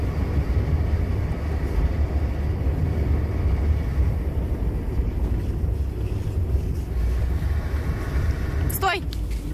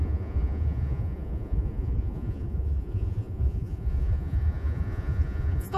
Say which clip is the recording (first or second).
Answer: first